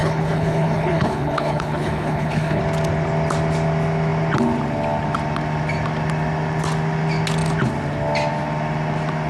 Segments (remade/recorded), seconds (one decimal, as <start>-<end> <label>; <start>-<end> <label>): 0.0-2.6 remade; 2.6-9.3 recorded

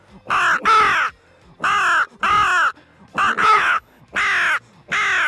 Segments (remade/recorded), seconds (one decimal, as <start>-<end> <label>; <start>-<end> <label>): 0.0-3.4 recorded; 3.4-4.0 remade; 4.0-5.3 recorded

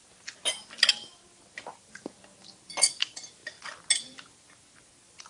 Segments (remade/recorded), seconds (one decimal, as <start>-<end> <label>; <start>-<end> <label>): 0.0-5.3 recorded

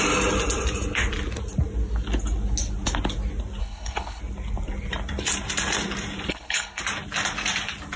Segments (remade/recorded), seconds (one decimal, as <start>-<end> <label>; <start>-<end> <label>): 0.0-3.6 recorded; 3.6-4.2 remade; 4.2-6.3 recorded; 6.3-6.8 remade; 6.8-8.0 recorded